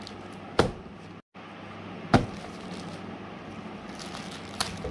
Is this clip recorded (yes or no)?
yes